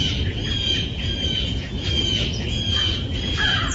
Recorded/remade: remade